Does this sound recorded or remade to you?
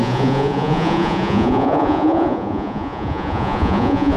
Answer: remade